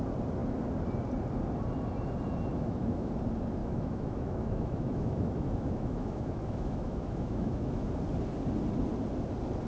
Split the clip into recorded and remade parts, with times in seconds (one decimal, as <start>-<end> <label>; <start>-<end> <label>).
0.0-2.5 recorded; 2.5-3.1 remade; 3.1-3.6 recorded; 3.6-7.9 remade; 7.9-9.7 recorded